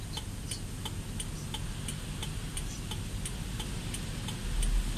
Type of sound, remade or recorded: recorded